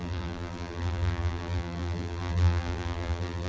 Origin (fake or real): fake